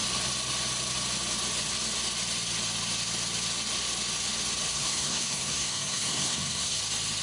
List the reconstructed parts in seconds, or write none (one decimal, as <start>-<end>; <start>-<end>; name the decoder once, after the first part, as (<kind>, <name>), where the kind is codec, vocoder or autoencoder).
4.7-6.8 (codec, SNAC)

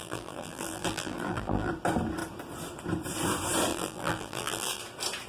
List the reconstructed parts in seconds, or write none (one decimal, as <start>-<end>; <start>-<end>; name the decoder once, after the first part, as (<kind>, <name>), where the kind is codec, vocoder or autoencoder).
0.0-1.7 (vocoder, BigVGAN v2); 3.7-4.8